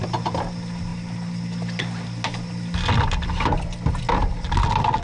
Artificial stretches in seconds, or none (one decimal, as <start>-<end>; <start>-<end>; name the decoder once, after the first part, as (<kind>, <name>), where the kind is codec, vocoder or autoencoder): none